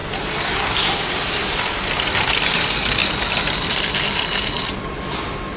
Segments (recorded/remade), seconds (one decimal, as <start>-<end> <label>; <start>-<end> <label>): 0.0-5.6 recorded